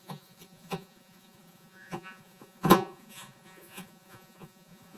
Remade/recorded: remade